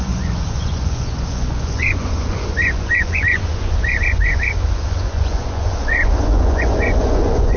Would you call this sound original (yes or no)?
no